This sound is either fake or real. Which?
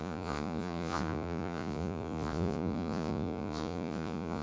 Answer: fake